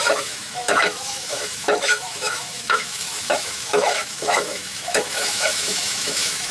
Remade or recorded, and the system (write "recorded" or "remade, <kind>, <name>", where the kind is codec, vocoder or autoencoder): remade, autoencoder, DAC-VAE